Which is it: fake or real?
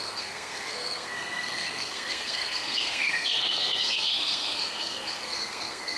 fake